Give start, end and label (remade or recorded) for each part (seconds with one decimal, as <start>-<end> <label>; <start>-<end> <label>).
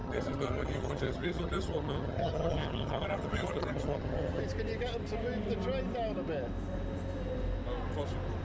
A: 0.0-4.4 remade; 4.4-8.4 recorded